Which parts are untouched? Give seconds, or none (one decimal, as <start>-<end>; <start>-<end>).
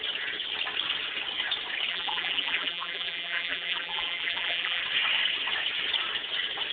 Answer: 0.0-1.9; 4.8-6.7